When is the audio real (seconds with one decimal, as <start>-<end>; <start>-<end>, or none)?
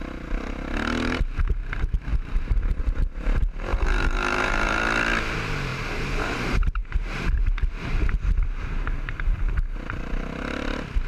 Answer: 0.0-2.1; 2.8-3.7; 4.8-5.7; 7.2-11.1